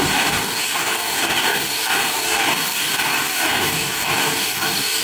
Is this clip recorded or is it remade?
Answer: remade